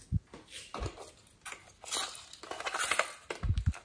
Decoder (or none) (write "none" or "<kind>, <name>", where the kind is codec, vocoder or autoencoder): none